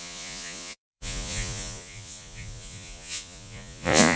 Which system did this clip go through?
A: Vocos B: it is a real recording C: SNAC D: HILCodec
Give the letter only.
A